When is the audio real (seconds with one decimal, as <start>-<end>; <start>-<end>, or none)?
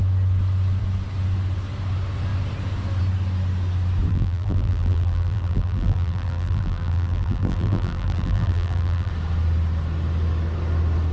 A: 0.0-4.1; 9.1-11.1